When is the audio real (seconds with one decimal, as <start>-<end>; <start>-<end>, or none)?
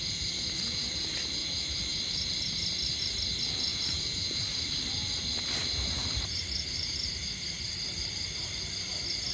0.0-3.7; 4.7-6.0; 7.7-9.3